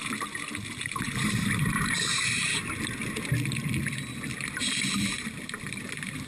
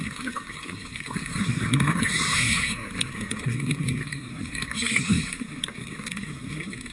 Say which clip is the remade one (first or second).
second